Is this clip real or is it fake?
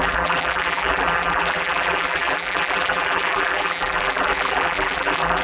fake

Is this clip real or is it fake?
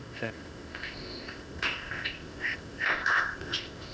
fake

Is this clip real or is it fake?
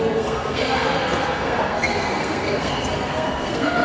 fake